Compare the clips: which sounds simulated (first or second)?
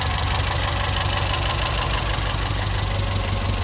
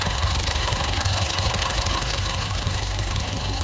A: second